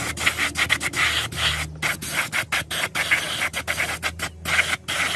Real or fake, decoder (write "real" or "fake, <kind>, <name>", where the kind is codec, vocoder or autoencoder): real